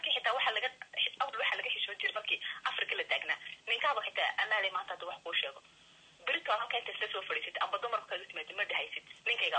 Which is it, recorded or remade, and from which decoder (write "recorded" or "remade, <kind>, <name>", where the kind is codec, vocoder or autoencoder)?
recorded